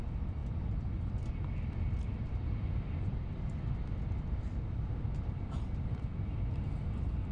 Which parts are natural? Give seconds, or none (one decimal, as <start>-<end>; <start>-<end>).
0.0-7.3